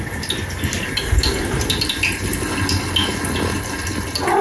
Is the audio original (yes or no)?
yes